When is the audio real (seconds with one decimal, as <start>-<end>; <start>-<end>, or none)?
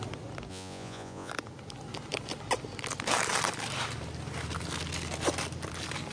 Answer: 0.0-0.5; 1.3-6.1